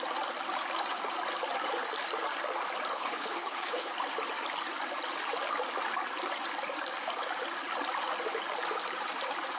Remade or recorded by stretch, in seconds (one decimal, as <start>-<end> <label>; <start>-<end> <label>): 0.0-2.9 recorded; 2.9-3.9 remade; 3.9-9.6 recorded